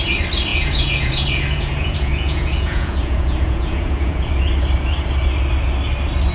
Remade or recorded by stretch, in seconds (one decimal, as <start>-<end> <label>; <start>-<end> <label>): 0.0-0.5 recorded; 0.5-4.3 remade; 4.3-6.3 recorded

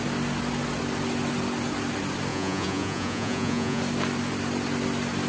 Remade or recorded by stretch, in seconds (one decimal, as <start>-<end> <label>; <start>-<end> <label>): 0.0-2.3 recorded; 2.3-3.8 remade; 3.8-5.3 recorded

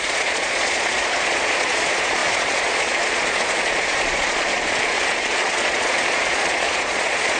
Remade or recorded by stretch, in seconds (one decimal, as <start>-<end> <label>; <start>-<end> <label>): 0.0-7.4 remade

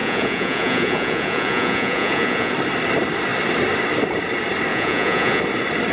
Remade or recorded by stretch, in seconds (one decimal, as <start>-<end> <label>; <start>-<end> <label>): 0.0-2.5 remade; 2.5-4.7 recorded; 4.7-5.4 remade; 5.4-5.9 recorded

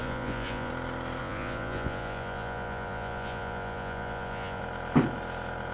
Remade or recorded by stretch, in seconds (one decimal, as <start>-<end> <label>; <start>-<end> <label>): 0.0-0.7 remade; 0.7-1.2 recorded; 1.2-4.6 remade; 4.6-5.7 recorded